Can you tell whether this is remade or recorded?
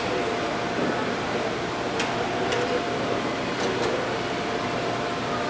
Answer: recorded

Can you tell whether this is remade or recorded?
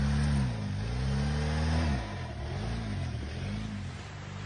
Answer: recorded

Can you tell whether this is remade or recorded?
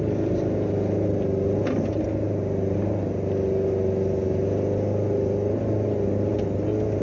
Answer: recorded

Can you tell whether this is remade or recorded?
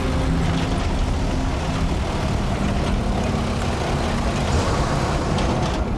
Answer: recorded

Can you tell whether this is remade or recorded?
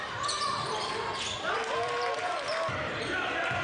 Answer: remade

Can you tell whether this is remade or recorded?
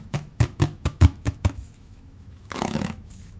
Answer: remade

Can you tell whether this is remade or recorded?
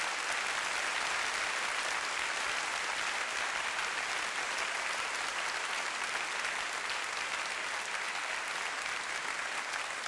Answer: recorded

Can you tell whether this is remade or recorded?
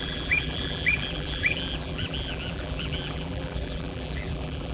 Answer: remade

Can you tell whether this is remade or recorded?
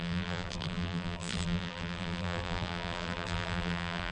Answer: remade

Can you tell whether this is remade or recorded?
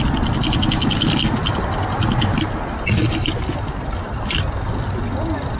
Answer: recorded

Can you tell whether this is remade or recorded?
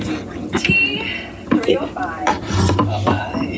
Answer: recorded